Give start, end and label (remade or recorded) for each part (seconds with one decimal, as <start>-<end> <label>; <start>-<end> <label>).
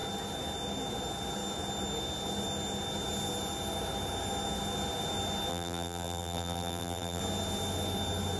0.0-5.5 recorded; 5.5-7.2 remade; 7.2-8.4 recorded